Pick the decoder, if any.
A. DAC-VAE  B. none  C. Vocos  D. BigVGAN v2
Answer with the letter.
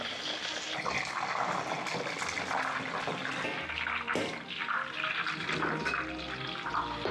B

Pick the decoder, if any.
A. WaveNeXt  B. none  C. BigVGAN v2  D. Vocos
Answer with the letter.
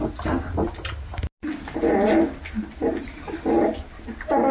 B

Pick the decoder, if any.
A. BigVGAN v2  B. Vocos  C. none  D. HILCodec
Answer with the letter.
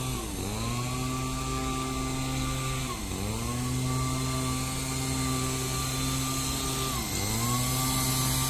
C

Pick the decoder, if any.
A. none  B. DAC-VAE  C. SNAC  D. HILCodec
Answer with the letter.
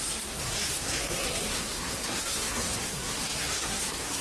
C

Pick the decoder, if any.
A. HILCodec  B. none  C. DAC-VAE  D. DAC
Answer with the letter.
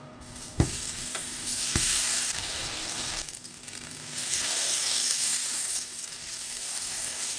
D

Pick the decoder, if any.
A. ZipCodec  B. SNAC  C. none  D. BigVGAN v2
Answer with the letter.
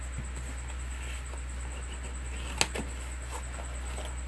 C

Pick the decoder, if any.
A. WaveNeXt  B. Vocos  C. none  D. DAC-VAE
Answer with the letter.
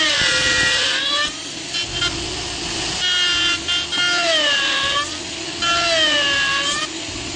C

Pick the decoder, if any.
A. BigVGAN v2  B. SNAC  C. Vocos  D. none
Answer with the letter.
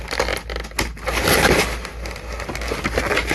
D